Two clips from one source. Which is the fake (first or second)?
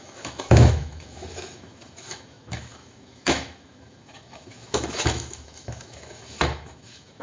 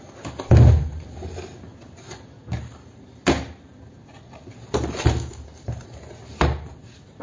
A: first